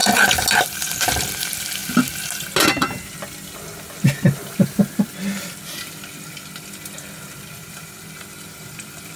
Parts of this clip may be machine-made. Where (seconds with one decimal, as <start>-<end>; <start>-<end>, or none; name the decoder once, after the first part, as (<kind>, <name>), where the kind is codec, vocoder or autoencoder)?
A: 0.6-1.8 (vocoder, BigVGAN v2); 5.1-9.2